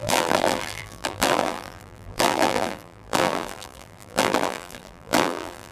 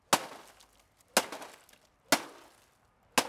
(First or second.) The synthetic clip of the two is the first